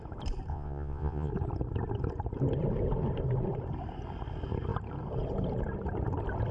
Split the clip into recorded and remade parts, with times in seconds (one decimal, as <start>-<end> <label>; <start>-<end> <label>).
0.0-0.5 recorded; 0.5-1.3 remade; 1.3-6.5 recorded